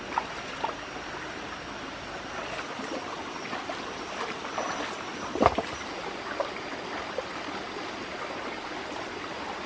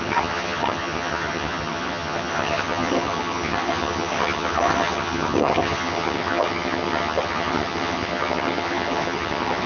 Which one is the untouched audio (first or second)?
first